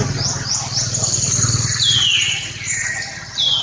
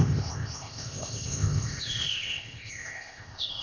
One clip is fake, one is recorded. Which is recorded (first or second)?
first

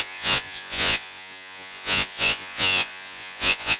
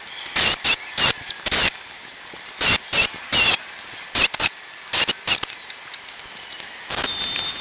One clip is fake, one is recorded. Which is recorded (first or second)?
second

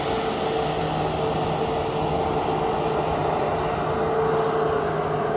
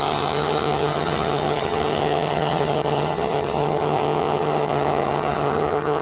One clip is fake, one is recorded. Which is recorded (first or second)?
first